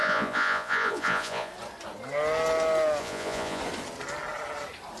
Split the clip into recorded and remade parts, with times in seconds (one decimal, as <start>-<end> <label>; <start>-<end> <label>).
0.0-1.5 remade; 1.5-3.0 recorded; 3.0-3.6 remade; 3.6-5.0 recorded